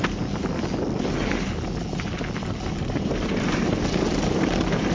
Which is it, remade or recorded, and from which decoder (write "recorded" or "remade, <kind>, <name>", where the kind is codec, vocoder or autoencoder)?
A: recorded